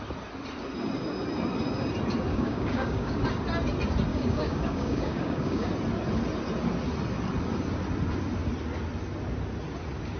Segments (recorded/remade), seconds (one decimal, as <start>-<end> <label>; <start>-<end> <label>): 0.0-2.3 recorded; 2.3-3.2 remade; 3.2-4.1 recorded; 4.1-5.7 remade; 5.7-10.2 recorded